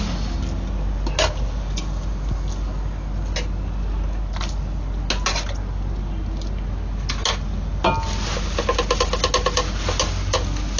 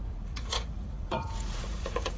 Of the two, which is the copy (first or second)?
second